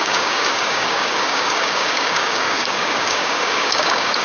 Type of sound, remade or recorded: remade